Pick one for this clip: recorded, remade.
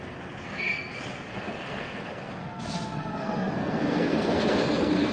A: remade